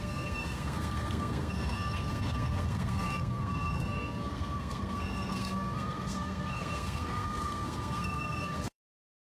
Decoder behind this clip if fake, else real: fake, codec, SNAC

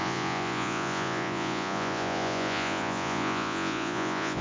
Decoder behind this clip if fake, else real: fake, vocoder, Vocos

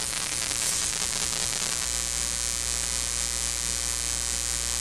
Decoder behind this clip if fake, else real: real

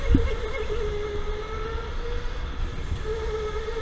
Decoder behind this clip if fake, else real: real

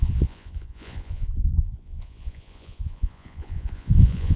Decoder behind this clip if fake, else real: fake, vocoder, Vocos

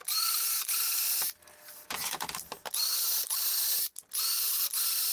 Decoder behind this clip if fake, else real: real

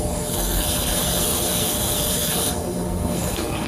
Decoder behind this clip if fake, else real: fake, codec, SNAC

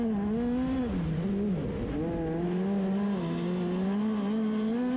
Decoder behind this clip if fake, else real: real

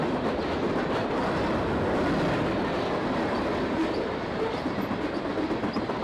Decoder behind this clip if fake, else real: real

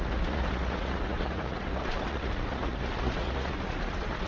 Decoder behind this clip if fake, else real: fake, vocoder, Vocos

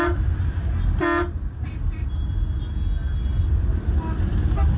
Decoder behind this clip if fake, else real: real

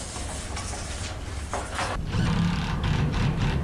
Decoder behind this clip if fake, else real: real